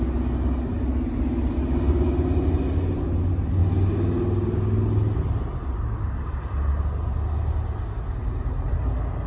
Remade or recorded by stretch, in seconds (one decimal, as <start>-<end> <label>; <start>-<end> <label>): 0.0-9.3 recorded